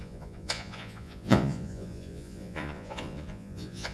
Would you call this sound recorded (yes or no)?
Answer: no